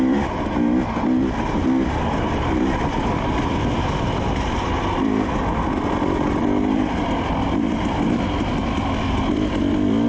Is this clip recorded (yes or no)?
yes